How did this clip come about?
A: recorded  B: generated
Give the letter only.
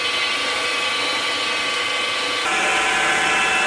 A